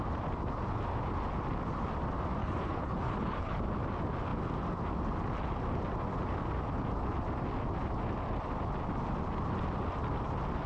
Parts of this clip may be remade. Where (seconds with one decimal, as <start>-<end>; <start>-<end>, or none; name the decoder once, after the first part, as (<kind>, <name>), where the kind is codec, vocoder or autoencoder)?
2.4-3.6 (codec, HILCodec)